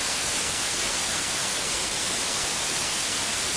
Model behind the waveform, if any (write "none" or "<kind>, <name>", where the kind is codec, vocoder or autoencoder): codec, SNAC